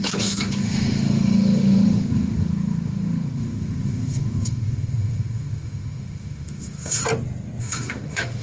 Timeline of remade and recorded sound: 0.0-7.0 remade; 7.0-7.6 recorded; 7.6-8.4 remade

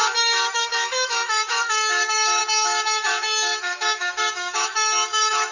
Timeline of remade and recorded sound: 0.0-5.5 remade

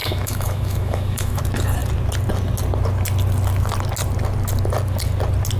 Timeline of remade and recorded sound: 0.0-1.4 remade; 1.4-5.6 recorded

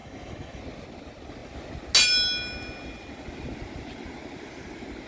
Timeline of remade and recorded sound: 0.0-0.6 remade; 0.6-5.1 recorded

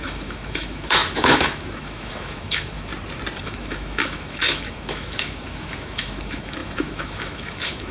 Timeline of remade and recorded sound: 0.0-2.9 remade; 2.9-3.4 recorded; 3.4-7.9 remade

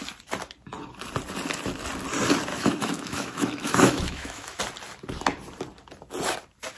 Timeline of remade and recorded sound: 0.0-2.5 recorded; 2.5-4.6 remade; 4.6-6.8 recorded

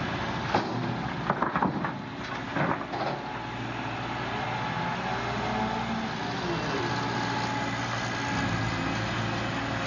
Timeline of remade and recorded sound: 0.0-9.9 recorded